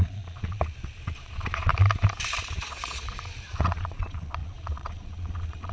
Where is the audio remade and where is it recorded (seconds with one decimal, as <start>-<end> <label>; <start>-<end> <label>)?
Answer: 0.0-1.7 remade; 1.7-2.6 recorded; 2.6-5.7 remade